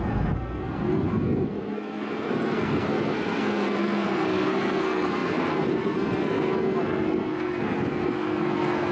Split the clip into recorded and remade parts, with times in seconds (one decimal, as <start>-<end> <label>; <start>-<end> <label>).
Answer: 0.0-8.9 remade